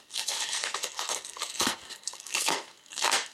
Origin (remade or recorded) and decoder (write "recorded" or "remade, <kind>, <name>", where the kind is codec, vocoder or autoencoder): remade, codec, SNAC